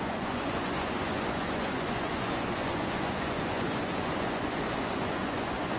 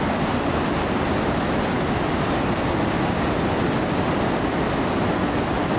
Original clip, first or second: second